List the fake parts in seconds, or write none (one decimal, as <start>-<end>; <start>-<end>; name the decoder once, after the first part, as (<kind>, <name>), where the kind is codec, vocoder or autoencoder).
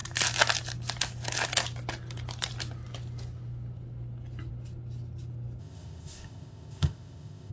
5.6-7.5 (codec, ZipCodec)